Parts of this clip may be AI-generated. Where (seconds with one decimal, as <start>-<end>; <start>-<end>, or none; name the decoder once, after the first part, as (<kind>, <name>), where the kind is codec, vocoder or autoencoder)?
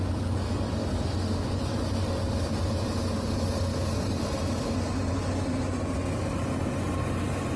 0.8-4.7 (vocoder, BigVGAN v2)